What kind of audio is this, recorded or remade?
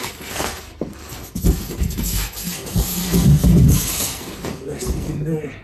remade